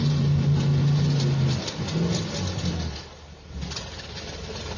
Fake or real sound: real